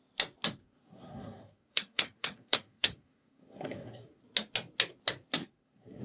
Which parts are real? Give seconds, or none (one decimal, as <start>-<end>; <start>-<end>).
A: 0.0-0.6; 4.2-5.4